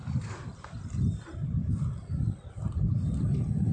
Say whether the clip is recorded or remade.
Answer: recorded